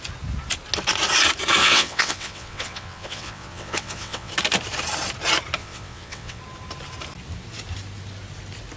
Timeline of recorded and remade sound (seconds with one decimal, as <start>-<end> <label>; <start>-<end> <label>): 0.0-1.6 recorded; 1.6-4.3 remade; 4.3-5.6 recorded; 5.6-6.4 remade; 6.4-8.8 recorded